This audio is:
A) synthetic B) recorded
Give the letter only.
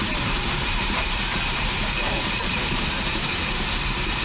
A